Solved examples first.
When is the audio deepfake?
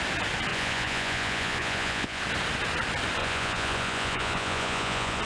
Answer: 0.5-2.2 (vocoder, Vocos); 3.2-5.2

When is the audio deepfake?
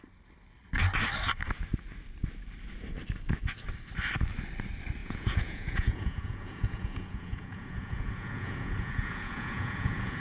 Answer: 5.0-10.2 (vocoder, Vocos)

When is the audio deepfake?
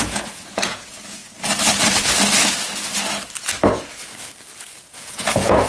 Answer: 0.0-1.2 (vocoder, Vocos); 4.6-5.7